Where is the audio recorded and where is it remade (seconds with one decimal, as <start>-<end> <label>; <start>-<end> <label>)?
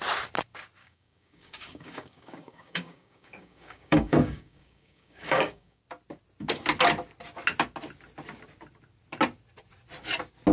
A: 0.0-0.8 recorded; 0.8-5.8 remade; 5.8-10.5 recorded